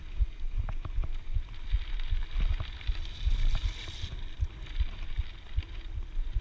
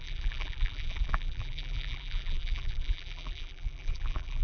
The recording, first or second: first